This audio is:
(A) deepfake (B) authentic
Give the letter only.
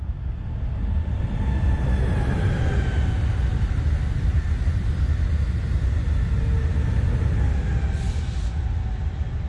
B